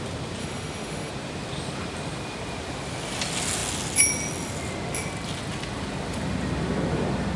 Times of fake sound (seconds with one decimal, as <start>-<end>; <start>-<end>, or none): 0.4-1.1